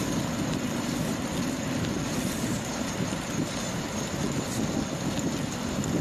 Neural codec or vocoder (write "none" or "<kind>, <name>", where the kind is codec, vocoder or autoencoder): none